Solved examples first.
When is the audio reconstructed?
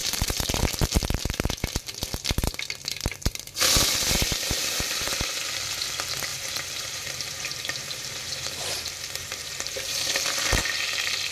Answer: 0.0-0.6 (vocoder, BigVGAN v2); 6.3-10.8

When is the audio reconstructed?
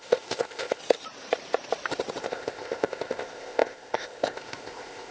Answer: 0.0-0.8 (codec, ZipCodec); 2.2-5.1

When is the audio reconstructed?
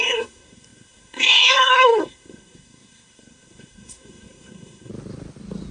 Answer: 0.0-4.9 (codec, SNAC)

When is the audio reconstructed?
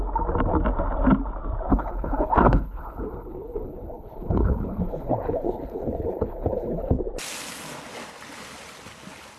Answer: 1.7-6.9 (codec, HILCodec)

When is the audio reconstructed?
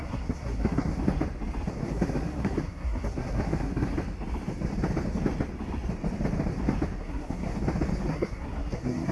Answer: 0.0-0.9 (codec, SNAC); 1.7-3.9; 7.0-7.5; 8.1-9.1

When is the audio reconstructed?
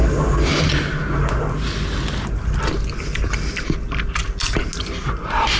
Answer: none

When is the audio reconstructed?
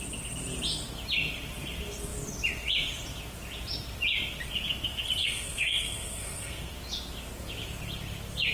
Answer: 5.2-6.7 (codec, SNAC)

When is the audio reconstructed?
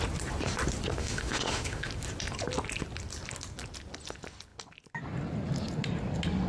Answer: 1.0-1.9 (autoencoder, DAC-VAE)